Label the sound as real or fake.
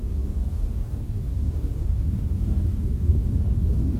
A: fake